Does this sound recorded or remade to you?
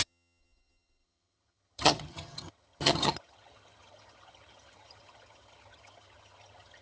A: remade